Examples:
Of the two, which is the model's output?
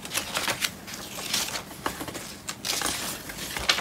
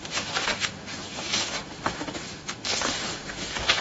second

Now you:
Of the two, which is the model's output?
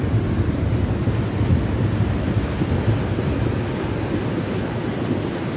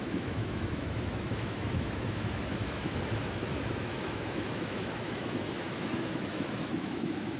second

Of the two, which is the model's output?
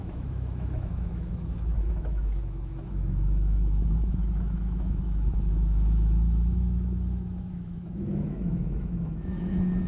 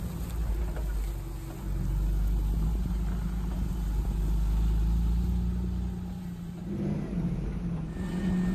first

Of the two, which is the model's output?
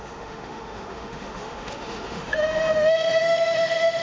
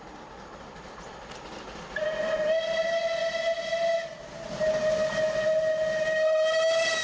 first